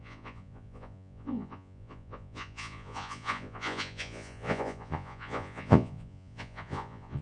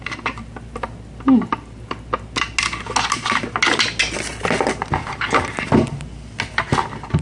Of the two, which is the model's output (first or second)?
first